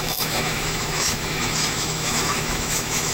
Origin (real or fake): fake